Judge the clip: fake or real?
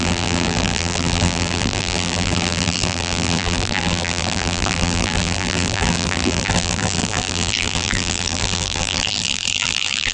fake